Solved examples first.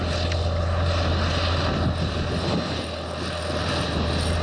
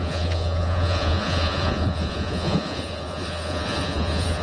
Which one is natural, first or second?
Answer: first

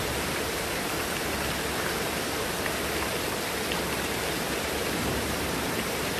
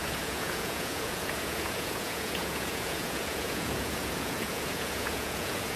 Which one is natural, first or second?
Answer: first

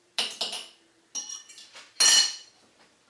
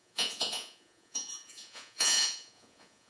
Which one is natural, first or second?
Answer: first